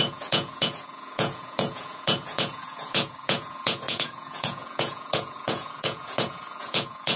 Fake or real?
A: fake